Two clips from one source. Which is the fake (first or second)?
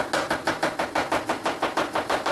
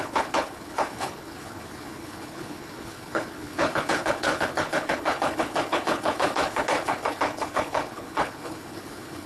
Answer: second